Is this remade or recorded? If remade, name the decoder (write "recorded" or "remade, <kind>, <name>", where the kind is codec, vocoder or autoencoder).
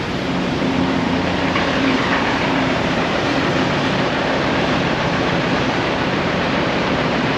remade, vocoder, BigVGAN v2